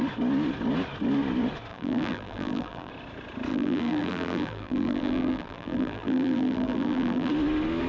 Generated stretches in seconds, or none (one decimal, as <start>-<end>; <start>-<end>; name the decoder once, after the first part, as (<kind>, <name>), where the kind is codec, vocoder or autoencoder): 1.7-2.9 (vocoder, BigVGAN v2); 3.5-7.3